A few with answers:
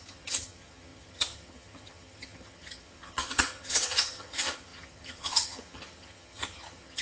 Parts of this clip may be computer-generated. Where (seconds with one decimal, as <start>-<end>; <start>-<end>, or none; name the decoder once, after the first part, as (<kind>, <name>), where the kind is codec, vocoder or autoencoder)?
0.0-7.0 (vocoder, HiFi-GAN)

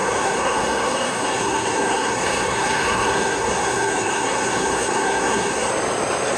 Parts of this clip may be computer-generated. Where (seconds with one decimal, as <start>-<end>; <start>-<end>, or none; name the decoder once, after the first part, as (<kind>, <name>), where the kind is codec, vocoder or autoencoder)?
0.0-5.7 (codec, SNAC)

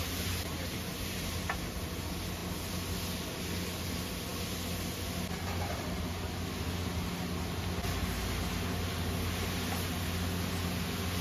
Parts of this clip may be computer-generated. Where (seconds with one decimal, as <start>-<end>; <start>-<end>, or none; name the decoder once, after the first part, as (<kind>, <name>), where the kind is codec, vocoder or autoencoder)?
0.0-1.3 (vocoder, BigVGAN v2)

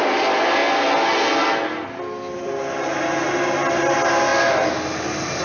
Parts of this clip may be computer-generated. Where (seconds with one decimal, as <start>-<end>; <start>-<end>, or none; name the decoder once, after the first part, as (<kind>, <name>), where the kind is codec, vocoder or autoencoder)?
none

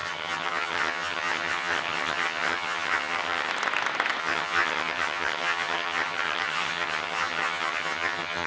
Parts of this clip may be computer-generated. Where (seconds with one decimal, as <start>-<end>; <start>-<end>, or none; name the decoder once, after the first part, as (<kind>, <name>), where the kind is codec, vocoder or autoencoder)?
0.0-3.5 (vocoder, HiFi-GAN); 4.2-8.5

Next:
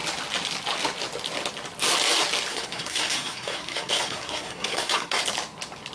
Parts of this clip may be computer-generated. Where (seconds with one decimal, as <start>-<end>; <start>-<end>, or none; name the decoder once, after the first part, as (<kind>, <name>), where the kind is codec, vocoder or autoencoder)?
2.5-5.2 (codec, SNAC)

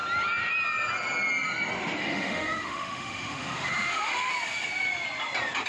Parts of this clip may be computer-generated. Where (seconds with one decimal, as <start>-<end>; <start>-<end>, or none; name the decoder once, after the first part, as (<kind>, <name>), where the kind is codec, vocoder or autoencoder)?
2.0-4.3 (autoencoder, DAC-VAE)